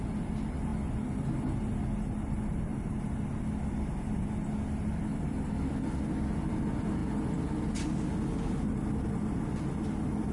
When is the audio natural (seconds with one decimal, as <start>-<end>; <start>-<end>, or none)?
0.0-10.3

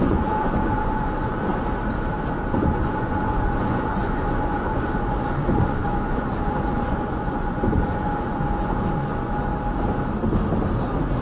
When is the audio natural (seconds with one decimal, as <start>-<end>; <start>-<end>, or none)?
1.5-2.5; 9.5-11.2

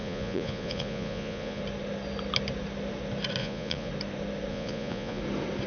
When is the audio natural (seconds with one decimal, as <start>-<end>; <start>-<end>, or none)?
1.6-3.4; 3.9-4.5; 5.2-5.7

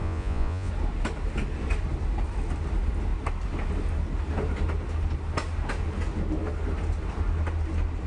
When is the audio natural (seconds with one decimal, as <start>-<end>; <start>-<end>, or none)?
0.7-8.1